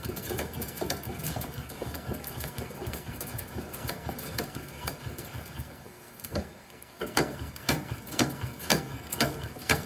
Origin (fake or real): fake